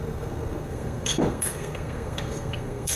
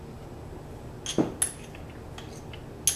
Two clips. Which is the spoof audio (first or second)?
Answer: first